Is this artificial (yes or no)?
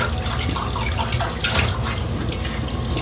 no